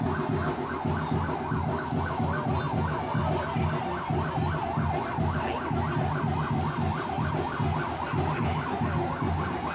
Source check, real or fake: real